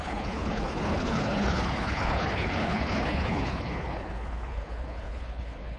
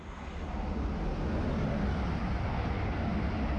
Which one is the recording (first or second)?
second